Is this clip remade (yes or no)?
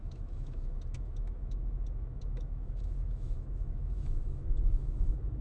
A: yes